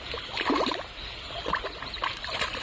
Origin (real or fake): real